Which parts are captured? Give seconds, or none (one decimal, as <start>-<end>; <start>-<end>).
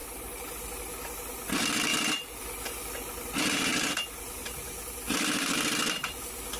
0.8-6.6